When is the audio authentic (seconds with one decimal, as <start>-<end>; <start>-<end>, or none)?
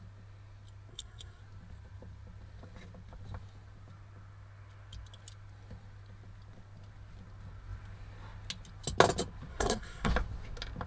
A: 0.0-0.9; 1.4-9.5; 10.1-10.9